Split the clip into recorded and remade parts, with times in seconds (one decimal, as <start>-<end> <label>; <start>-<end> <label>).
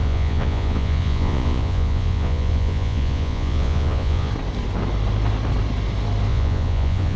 0.0-4.3 remade; 4.3-6.3 recorded; 6.3-7.2 remade